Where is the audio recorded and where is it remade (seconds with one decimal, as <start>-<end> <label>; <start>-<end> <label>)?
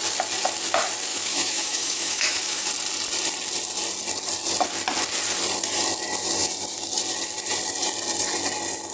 0.0-1.1 recorded; 1.1-2.7 remade; 2.7-8.9 recorded